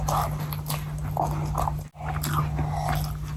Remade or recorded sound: recorded